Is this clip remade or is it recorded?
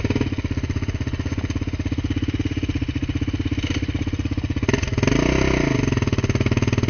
recorded